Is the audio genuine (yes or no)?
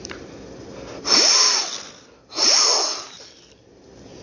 yes